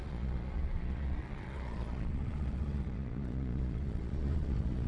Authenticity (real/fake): fake